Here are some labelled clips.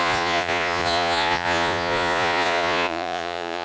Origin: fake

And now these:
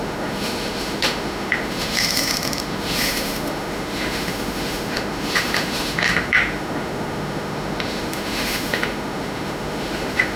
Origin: fake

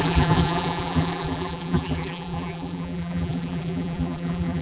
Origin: fake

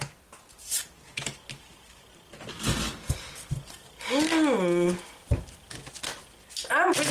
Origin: real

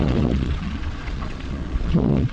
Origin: fake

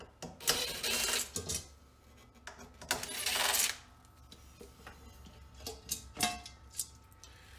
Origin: real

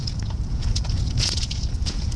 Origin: fake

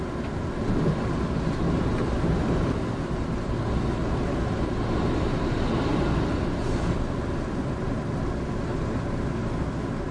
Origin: real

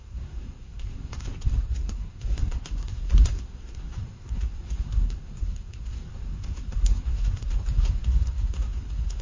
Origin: fake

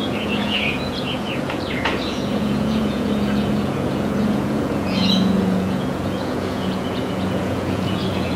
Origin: fake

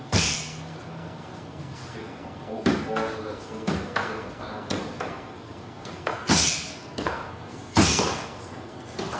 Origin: fake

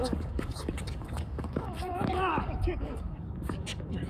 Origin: fake